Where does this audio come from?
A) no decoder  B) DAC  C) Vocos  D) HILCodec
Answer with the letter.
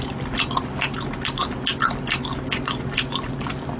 A